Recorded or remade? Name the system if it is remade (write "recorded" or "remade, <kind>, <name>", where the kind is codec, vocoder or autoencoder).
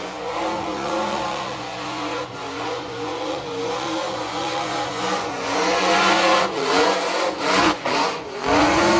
remade, vocoder, Vocos